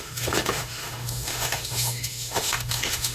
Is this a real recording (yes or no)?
no